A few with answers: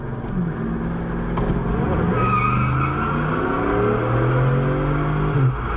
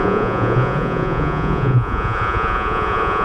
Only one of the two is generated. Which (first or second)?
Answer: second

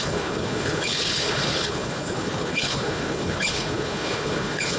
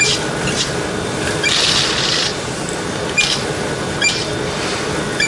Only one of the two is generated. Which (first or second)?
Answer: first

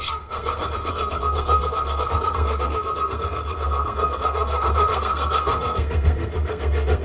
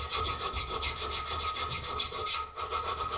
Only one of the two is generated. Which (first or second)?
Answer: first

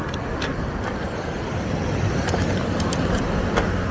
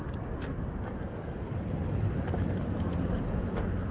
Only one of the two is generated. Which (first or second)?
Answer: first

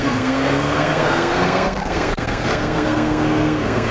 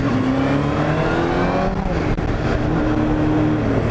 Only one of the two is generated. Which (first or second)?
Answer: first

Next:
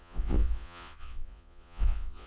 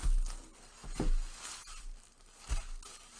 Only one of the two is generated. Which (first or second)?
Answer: first